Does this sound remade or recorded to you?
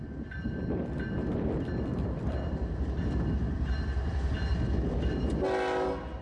recorded